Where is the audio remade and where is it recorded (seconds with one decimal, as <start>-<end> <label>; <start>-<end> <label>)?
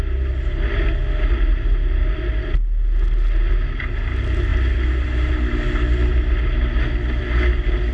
0.0-4.5 recorded; 4.5-5.3 remade; 5.3-7.9 recorded